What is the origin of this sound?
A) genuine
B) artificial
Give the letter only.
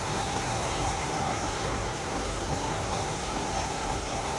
B